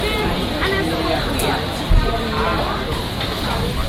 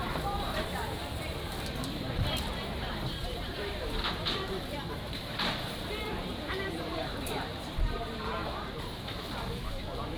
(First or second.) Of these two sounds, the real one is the first